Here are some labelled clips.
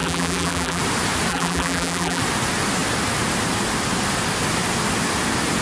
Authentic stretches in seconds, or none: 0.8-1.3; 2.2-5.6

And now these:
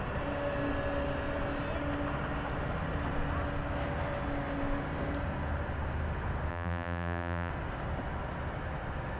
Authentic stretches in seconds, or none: 0.0-6.5; 7.5-9.2

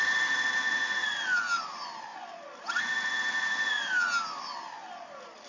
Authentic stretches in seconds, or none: 0.0-1.0; 1.6-2.1; 3.8-4.8